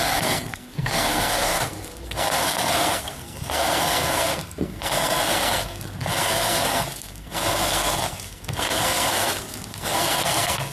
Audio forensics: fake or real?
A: fake